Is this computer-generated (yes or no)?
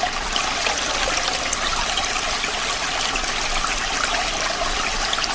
no